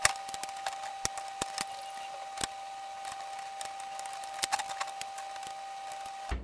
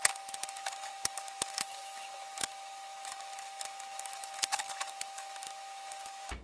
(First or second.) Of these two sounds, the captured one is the first